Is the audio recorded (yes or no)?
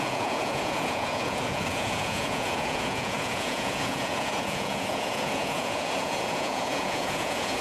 no